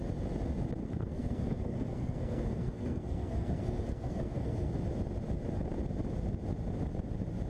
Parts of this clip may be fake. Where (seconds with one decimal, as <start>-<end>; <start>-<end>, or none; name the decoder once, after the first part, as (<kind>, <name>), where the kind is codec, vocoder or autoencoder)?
0.8-4.7 (codec, SNAC)